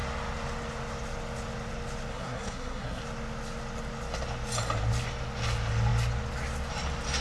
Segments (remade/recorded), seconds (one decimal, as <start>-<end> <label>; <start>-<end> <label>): 0.0-2.1 recorded; 2.1-3.0 remade; 3.0-7.2 recorded